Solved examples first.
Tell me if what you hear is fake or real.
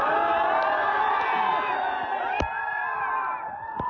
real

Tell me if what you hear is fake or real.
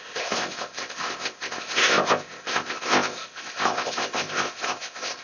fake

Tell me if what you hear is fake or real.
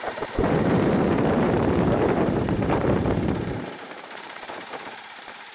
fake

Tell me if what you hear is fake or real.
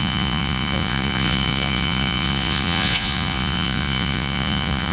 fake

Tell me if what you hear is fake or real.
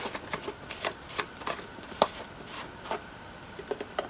real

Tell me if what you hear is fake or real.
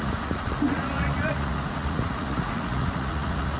fake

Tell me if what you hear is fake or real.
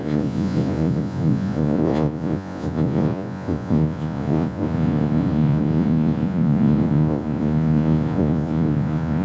fake